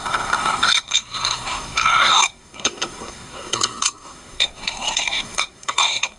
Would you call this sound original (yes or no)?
no